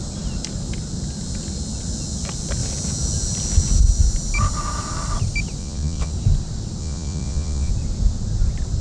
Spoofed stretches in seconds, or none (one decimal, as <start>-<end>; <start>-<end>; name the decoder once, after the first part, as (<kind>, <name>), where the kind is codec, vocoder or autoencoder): 5.6-6.1 (vocoder, Vocos); 6.8-7.7